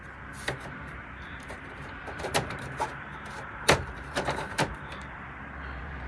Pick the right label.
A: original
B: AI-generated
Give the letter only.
B